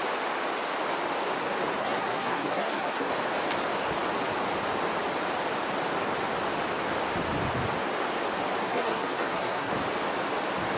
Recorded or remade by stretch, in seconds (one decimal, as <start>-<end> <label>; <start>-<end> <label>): 0.0-1.8 recorded; 1.8-3.1 remade; 3.1-8.6 recorded; 8.6-9.7 remade; 9.7-10.8 recorded